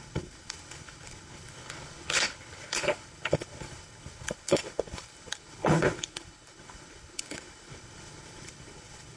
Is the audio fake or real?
fake